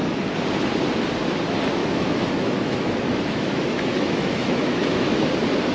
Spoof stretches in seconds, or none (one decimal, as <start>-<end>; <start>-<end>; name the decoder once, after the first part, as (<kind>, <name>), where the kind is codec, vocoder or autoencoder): 1.8-5.2 (autoencoder, DAC-VAE)